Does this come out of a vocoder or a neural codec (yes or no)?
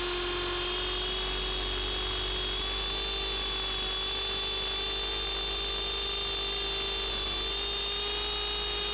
no